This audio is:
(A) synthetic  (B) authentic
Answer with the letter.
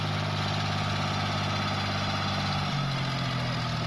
B